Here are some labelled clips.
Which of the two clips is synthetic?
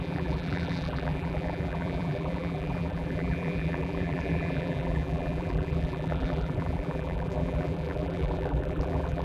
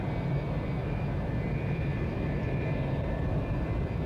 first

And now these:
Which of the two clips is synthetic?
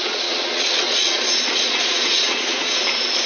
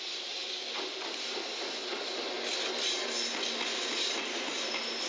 first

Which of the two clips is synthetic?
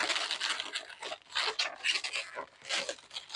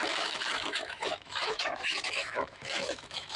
second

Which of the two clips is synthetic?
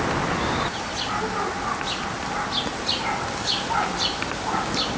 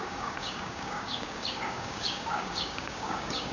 second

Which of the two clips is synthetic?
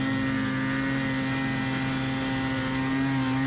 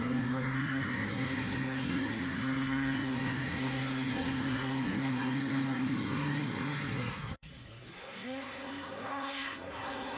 second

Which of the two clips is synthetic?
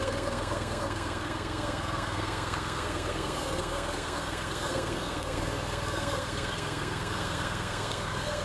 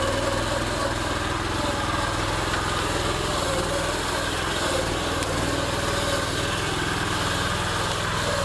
first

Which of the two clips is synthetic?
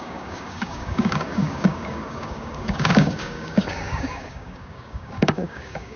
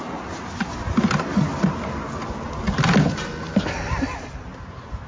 first